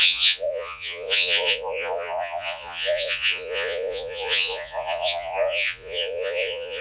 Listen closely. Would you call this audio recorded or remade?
remade